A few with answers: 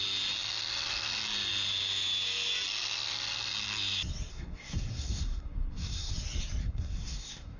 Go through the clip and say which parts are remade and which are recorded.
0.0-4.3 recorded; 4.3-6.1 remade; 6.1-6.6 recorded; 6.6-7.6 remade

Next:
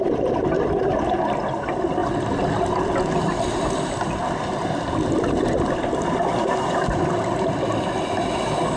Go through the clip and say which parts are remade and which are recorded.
0.0-8.8 recorded

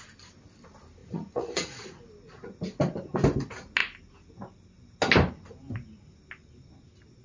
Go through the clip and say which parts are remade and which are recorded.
0.0-1.0 recorded; 1.0-2.0 remade; 2.0-7.2 recorded